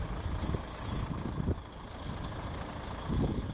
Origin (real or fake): real